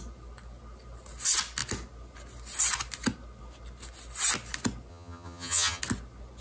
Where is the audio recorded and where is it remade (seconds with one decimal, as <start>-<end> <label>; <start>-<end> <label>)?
0.0-4.9 recorded; 4.9-5.8 remade; 5.8-6.4 recorded